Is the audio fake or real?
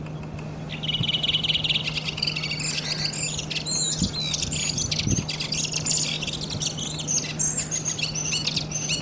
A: real